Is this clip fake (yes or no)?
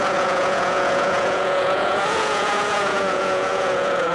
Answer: yes